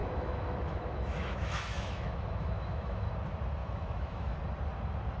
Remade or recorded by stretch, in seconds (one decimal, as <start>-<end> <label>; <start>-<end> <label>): 0.0-3.1 remade; 3.1-3.6 recorded; 3.6-4.4 remade; 4.4-5.2 recorded